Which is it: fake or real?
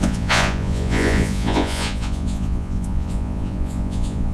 fake